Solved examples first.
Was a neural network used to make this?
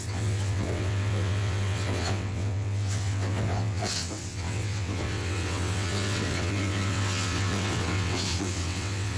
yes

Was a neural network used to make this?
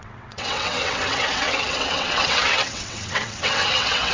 yes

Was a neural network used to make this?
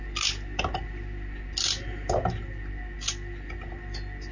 no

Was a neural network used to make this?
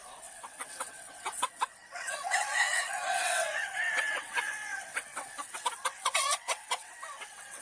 yes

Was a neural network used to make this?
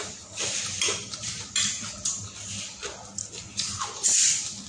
no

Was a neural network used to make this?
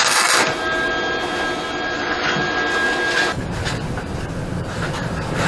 no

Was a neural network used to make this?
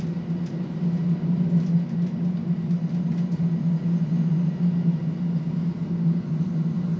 no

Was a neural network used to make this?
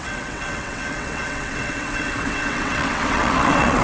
yes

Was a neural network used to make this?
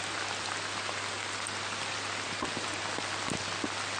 no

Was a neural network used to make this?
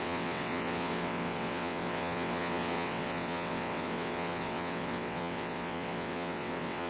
yes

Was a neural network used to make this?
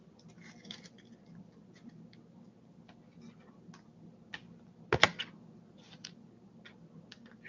no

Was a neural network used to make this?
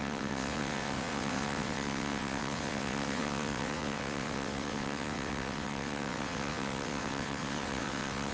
yes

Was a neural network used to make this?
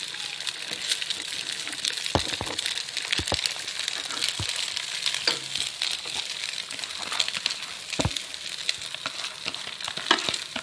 no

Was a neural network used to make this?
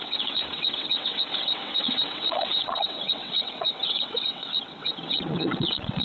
yes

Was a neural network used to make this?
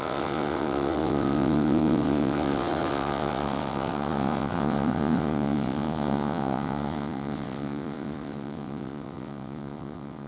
yes